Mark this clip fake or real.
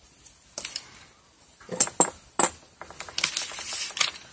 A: real